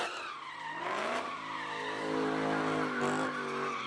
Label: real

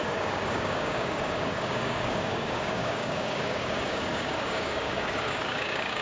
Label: fake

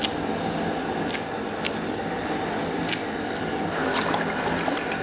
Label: real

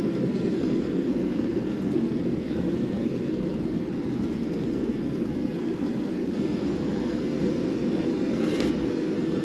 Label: fake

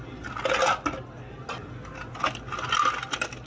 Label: real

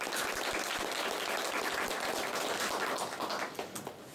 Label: real